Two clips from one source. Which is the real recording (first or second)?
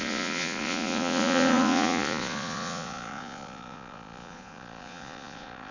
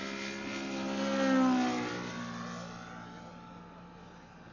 second